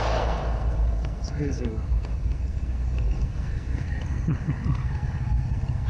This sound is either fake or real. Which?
fake